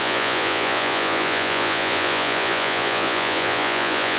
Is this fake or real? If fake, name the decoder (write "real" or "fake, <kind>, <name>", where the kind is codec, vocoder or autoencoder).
fake, vocoder, Vocos